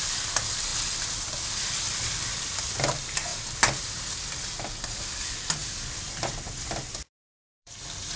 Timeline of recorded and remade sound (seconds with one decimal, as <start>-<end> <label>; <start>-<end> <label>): 0.0-0.7 remade; 0.7-1.7 recorded; 1.7-3.3 remade; 3.3-5.0 recorded; 5.0-5.6 remade; 5.6-6.9 recorded; 6.9-8.2 remade